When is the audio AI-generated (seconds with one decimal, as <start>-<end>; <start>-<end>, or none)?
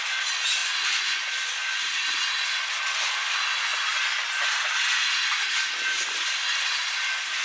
0.6-1.2